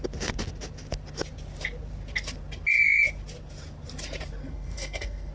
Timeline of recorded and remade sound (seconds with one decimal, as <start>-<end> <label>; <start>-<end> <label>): 0.0-4.4 recorded; 4.4-5.3 remade